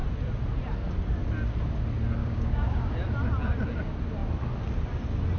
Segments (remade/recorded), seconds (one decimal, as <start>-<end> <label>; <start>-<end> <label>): 0.0-2.2 recorded; 2.2-2.9 remade; 2.9-5.4 recorded